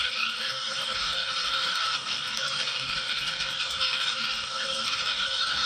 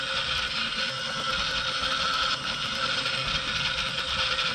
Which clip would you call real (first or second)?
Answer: second